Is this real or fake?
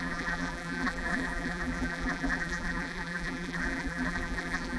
fake